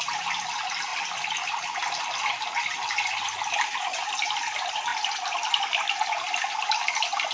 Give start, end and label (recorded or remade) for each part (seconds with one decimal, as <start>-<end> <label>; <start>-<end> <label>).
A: 0.0-7.3 recorded